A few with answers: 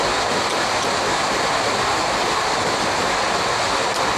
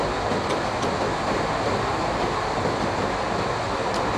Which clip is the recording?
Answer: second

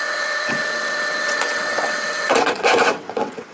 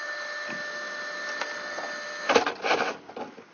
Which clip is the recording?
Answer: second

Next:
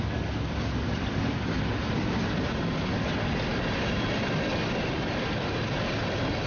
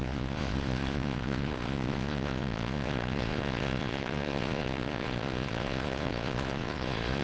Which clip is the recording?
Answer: first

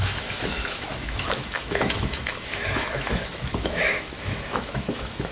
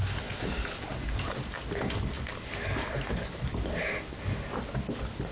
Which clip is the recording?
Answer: second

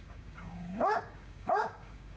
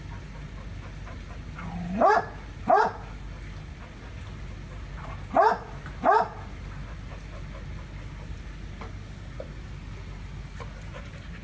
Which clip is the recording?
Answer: second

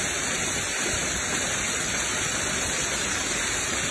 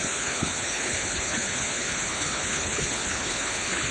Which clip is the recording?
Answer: first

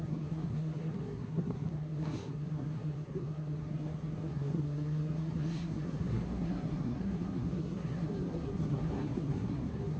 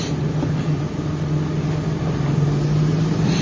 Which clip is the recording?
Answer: second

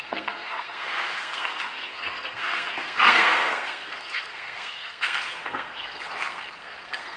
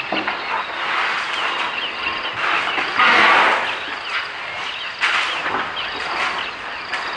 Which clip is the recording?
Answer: second